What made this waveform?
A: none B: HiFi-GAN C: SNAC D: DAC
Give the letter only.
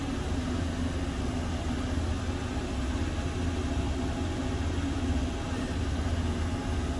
A